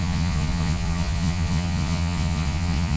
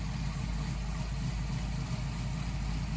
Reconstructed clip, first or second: first